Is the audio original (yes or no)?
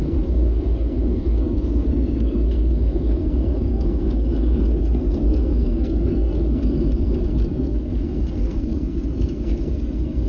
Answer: no